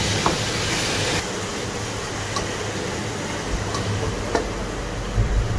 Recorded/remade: recorded